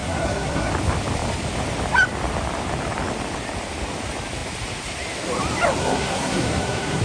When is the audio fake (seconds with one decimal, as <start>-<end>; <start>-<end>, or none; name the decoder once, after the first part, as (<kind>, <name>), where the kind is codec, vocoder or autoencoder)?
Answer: 0.0-0.7 (codec, SNAC); 5.8-7.0